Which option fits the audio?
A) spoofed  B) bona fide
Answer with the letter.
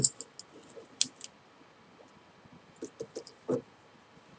B